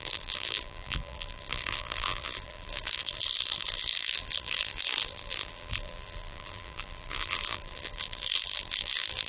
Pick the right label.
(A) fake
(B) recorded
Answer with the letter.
A